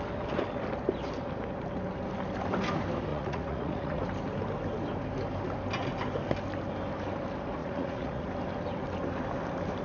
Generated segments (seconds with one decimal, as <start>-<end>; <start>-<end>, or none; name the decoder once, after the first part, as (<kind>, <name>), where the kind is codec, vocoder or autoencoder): 3.1-4.0 (vocoder, Vocos); 7.6-8.3